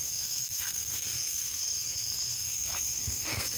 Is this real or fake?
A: fake